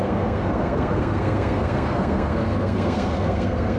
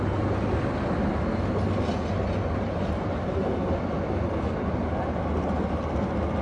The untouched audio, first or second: second